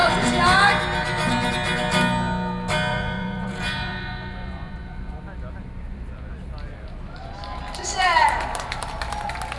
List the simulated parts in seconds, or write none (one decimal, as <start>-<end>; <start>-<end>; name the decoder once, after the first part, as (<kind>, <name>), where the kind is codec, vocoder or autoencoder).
2.9-5.2 (vocoder, Vocos)